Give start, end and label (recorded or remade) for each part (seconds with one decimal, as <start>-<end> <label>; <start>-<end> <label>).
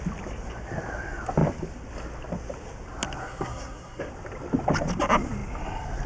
0.0-3.2 recorded; 3.2-4.1 remade; 4.1-6.1 recorded